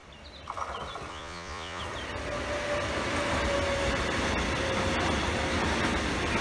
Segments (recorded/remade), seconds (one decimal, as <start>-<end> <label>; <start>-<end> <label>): 0.0-1.1 recorded; 1.1-1.8 remade; 1.8-6.4 recorded